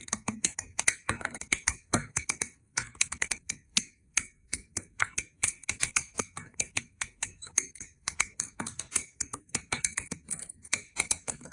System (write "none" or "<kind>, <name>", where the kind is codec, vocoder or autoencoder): codec, SNAC